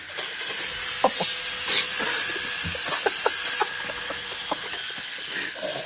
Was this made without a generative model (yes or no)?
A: yes